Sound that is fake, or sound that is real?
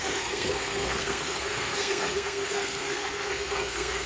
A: fake